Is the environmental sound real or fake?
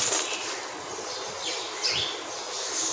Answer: real